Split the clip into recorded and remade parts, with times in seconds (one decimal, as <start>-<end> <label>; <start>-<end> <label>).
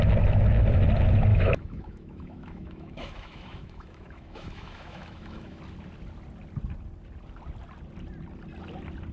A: 0.0-1.3 recorded; 1.3-5.6 remade; 5.6-9.1 recorded